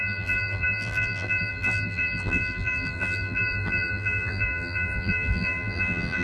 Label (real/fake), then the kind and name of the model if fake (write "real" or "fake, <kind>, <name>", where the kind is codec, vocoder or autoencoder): fake, vocoder, BigVGAN v2